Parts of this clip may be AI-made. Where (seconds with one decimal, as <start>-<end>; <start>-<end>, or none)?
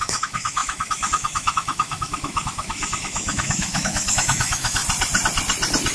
0.0-4.8